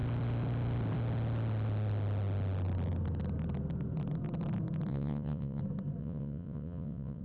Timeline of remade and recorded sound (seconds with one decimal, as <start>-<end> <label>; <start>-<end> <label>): 0.0-4.9 recorded; 4.9-5.6 remade; 5.6-6.0 recorded; 6.0-7.2 remade